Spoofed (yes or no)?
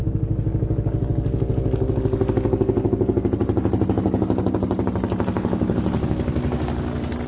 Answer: no